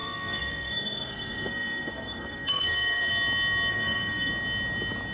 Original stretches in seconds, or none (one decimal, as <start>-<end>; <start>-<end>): 3.1-3.7; 4.3-5.1